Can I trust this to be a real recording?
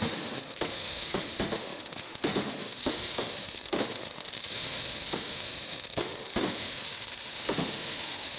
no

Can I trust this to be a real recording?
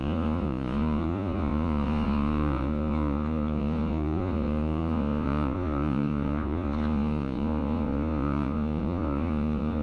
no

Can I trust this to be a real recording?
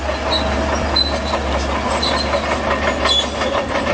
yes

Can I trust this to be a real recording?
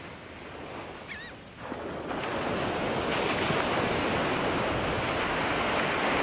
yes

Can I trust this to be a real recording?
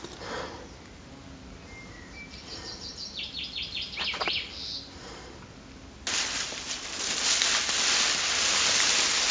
yes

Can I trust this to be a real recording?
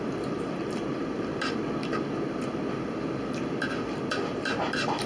yes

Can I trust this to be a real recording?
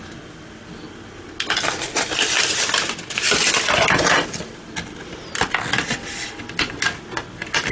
yes